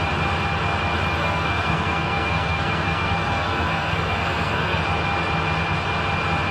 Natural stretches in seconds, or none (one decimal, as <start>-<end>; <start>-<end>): 0.0-1.2; 4.8-6.5